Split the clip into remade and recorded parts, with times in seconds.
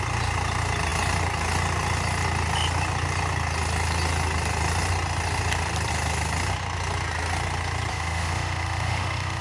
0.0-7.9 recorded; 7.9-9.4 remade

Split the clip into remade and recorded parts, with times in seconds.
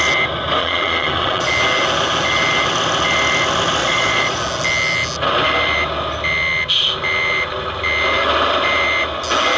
0.0-0.6 recorded; 0.6-1.5 remade; 1.5-3.8 recorded; 3.8-4.4 remade; 4.4-9.6 recorded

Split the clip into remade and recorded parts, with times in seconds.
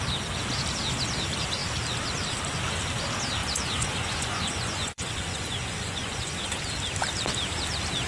0.0-3.4 recorded; 3.4-6.6 remade; 6.6-8.1 recorded